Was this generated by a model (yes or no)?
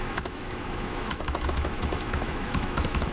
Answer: yes